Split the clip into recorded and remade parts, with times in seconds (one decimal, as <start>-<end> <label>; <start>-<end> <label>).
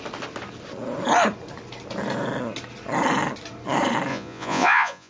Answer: 0.0-4.1 recorded; 4.1-5.1 remade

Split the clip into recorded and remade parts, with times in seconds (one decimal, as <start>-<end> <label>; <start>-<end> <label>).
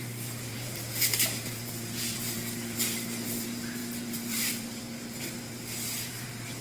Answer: 0.0-6.6 remade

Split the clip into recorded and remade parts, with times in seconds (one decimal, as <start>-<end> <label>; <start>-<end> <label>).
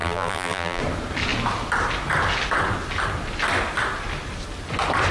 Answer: 0.0-0.8 remade; 0.8-5.1 recorded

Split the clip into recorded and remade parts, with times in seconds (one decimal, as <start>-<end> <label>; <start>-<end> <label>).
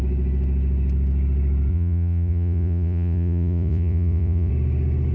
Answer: 0.0-1.7 recorded; 1.7-4.5 remade; 4.5-5.1 recorded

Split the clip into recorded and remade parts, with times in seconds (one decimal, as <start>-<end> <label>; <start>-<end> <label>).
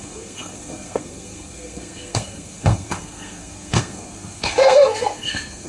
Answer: 0.0-5.7 remade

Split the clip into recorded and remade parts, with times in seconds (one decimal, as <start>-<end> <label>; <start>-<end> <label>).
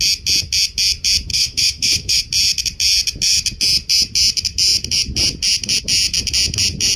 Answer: 0.0-1.3 recorded; 1.3-2.2 remade; 2.2-7.0 recorded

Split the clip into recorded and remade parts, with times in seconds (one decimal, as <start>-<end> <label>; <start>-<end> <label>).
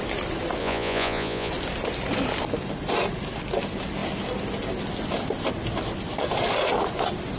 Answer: 0.0-0.6 recorded; 0.6-1.5 remade; 1.5-7.4 recorded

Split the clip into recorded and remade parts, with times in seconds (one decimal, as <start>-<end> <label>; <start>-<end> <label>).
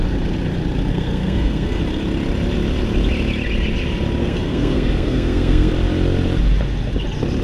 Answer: 0.0-0.9 recorded; 0.9-1.8 remade; 1.8-4.2 recorded; 4.2-5.7 remade; 5.7-7.4 recorded